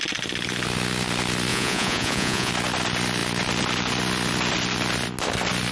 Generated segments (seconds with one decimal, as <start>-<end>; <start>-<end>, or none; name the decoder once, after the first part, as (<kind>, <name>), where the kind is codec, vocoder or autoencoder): 1.5-2.5 (vocoder, Vocos)